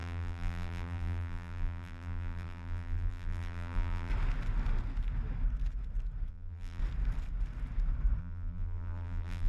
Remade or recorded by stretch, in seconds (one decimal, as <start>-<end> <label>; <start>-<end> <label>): 0.0-4.1 remade; 4.1-6.3 recorded; 6.3-6.8 remade; 6.8-8.2 recorded; 8.2-9.5 remade